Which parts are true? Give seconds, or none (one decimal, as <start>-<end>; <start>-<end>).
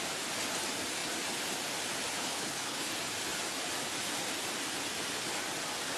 0.0-2.1; 2.9-6.0